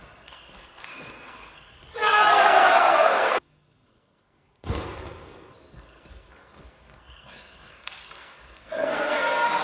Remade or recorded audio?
remade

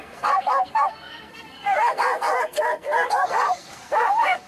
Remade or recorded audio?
remade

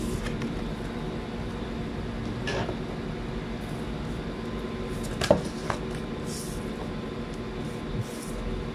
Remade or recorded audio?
recorded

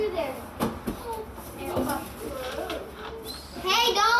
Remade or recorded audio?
recorded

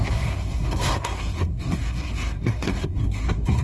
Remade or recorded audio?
remade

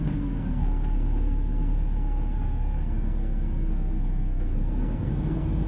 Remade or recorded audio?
remade